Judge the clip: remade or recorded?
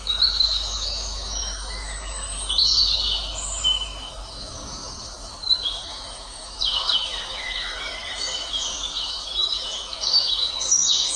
remade